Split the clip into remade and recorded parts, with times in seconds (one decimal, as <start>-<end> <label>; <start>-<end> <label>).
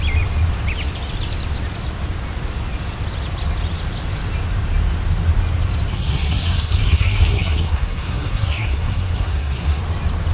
0.0-5.9 recorded; 5.9-9.8 remade; 9.8-10.3 recorded